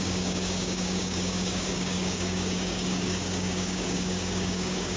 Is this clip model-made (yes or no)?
yes